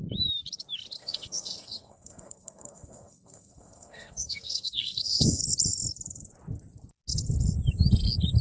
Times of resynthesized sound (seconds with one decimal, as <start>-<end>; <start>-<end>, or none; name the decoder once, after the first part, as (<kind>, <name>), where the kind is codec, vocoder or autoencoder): 1.0-5.4 (codec, SNAC)